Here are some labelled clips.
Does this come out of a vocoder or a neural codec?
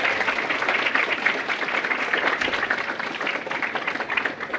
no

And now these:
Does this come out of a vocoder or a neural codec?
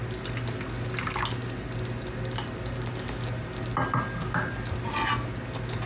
no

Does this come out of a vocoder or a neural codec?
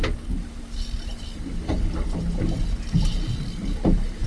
no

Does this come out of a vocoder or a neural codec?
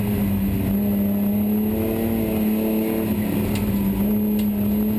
no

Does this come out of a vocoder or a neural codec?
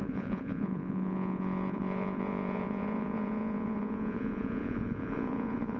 yes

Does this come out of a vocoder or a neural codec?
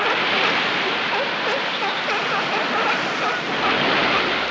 no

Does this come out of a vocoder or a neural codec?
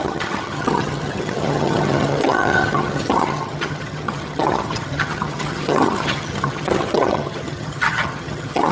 yes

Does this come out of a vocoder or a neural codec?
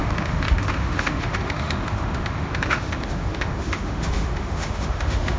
yes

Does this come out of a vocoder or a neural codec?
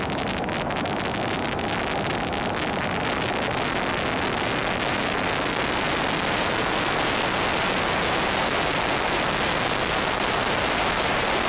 no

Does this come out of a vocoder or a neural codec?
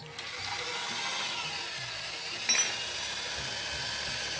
no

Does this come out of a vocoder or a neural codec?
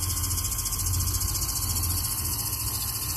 no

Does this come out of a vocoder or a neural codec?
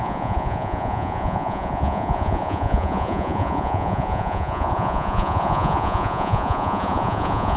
yes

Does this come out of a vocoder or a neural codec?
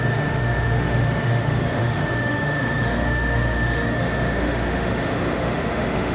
yes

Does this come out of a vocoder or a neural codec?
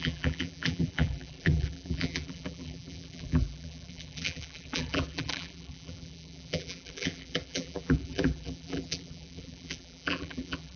yes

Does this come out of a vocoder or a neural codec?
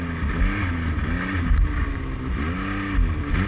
no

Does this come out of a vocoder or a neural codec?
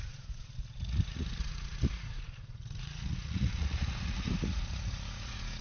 yes